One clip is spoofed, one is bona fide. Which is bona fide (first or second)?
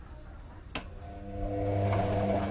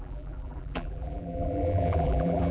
first